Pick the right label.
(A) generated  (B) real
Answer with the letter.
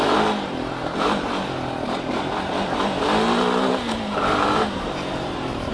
A